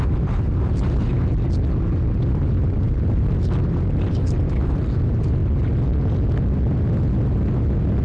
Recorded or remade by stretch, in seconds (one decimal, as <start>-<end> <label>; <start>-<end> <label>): 0.0-1.3 remade; 1.3-2.3 recorded; 2.3-5.4 remade; 5.4-8.0 recorded